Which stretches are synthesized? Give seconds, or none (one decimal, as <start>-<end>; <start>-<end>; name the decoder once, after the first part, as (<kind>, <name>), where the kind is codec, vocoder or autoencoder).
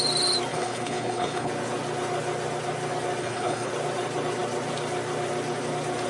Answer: 0.5-1.5 (codec, HILCodec); 3.2-3.7